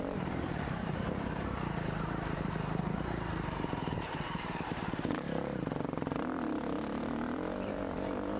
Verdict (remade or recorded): remade